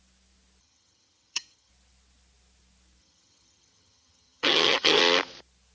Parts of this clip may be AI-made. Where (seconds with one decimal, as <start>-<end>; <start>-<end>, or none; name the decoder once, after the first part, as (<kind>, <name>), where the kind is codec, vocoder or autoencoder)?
0.6-1.7 (vocoder, HiFi-GAN); 3.0-5.0